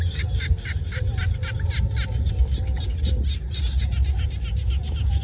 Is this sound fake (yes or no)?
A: no